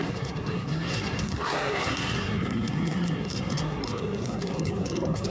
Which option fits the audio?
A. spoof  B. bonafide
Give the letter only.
A